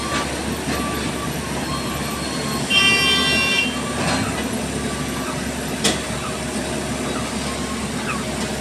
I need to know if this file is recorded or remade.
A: recorded